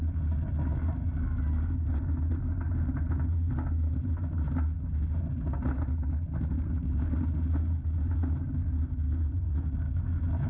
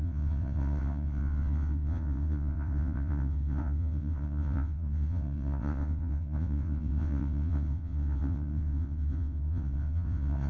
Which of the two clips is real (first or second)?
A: first